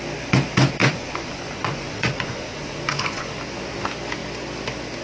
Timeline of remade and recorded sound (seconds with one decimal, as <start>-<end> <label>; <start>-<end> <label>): 0.0-0.8 recorded; 0.8-3.3 remade; 3.3-5.0 recorded